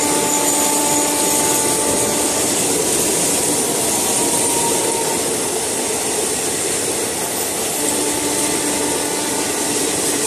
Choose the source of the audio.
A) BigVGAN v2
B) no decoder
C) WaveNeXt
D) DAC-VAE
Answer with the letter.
B